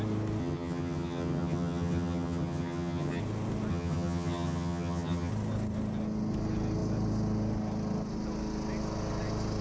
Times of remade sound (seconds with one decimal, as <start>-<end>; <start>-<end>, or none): 0.4-3.2; 3.7-5.3